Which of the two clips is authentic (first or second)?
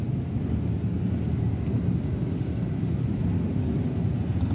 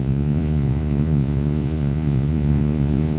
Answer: first